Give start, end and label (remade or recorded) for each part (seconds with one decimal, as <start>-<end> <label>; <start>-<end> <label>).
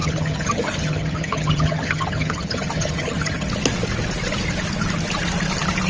0.0-3.5 remade; 3.5-5.9 recorded